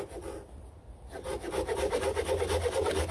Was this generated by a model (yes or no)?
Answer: no